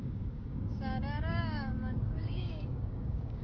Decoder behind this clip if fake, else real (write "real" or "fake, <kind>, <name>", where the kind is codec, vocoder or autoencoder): fake, codec, DAC